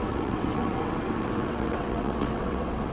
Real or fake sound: fake